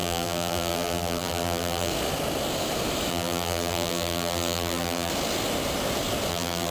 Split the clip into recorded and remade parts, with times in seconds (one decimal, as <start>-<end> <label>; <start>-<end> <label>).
0.0-1.9 remade; 1.9-3.1 recorded; 3.1-5.1 remade; 5.1-6.3 recorded; 6.3-6.7 remade